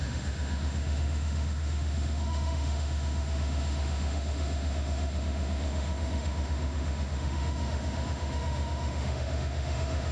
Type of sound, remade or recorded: remade